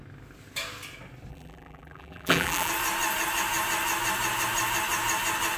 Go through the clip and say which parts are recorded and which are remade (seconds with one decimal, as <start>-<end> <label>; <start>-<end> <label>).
0.0-1.3 recorded; 1.3-2.7 remade; 2.7-5.6 recorded